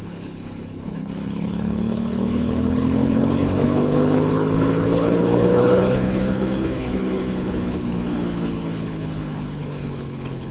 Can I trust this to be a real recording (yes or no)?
no